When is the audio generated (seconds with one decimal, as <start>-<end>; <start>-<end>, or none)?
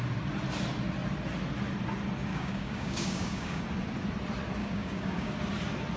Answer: 2.3-3.6; 4.6-5.3